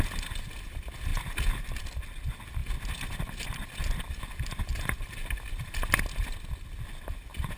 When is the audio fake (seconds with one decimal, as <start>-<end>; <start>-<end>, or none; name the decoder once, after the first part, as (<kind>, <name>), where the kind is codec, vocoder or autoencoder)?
none